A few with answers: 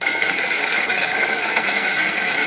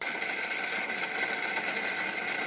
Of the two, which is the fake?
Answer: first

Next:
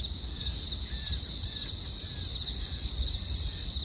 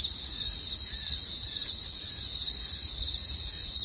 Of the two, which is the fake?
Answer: second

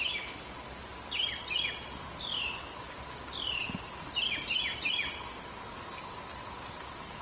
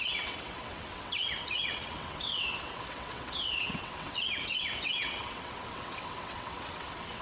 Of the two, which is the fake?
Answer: second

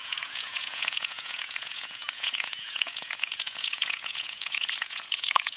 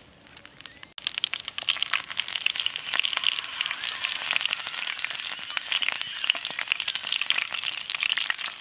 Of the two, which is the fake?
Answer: first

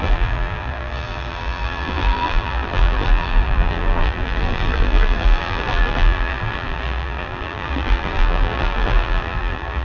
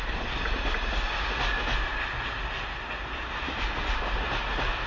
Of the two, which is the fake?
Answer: first